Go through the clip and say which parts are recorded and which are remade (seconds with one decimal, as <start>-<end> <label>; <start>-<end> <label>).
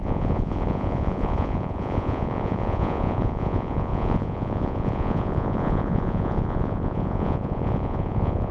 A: 0.0-8.5 remade